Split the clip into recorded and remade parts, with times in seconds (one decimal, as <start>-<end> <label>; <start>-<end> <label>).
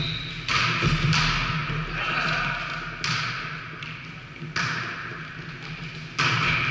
0.0-6.7 recorded